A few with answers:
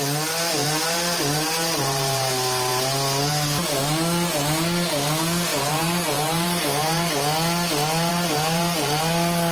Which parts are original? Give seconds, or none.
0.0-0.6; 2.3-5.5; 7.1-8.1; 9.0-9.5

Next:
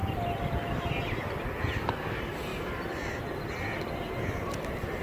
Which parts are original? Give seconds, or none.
0.0-5.0

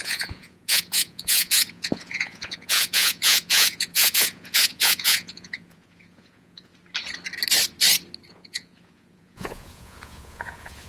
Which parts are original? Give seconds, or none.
6.7-8.3

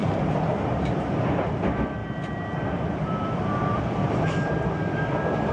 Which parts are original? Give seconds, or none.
1.2-2.0